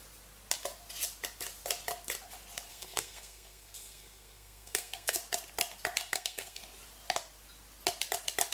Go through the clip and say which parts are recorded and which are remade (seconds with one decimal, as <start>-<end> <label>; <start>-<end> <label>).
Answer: 0.0-2.7 recorded; 2.7-5.2 remade; 5.2-6.1 recorded; 6.1-6.6 remade; 6.6-8.5 recorded